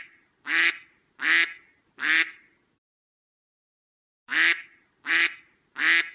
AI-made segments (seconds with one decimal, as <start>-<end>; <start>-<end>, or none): none